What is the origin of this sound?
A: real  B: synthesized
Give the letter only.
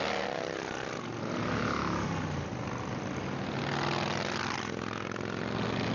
A